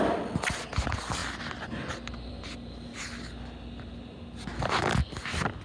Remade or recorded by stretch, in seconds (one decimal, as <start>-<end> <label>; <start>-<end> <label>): 0.0-5.6 recorded